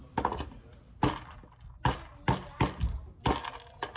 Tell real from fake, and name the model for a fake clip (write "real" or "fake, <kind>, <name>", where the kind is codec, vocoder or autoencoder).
real